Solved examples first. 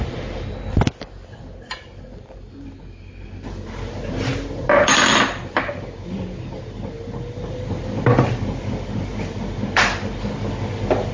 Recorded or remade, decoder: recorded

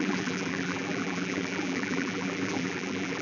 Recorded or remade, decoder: remade, vocoder, BigVGAN v2